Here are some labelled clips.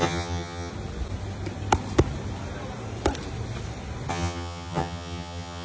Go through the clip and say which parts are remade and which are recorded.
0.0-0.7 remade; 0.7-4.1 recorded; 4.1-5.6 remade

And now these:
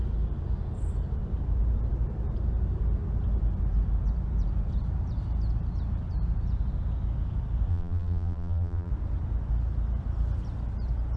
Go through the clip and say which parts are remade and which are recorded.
0.0-7.7 recorded; 7.7-8.9 remade; 8.9-11.2 recorded

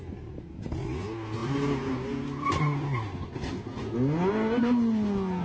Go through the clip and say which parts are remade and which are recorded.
0.0-5.4 recorded

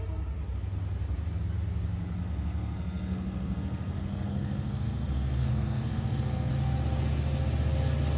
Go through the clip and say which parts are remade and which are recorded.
0.0-2.2 recorded; 2.2-6.5 remade; 6.5-8.2 recorded